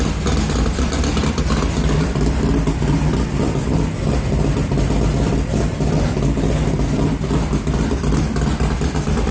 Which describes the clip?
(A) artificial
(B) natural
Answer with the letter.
B